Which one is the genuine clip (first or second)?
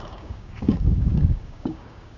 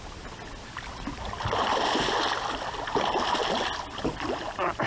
second